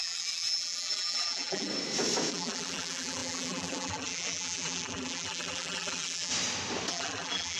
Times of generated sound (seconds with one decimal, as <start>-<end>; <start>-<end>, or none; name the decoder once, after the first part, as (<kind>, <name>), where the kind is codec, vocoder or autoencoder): 0.0-1.7 (vocoder, BigVGAN v2); 2.3-6.3; 6.9-7.6